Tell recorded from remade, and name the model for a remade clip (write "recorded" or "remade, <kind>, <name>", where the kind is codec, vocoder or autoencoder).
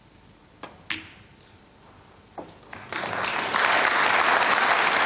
recorded